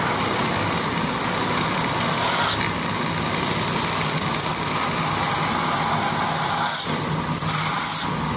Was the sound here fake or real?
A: real